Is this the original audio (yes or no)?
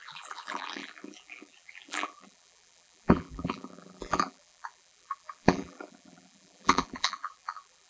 no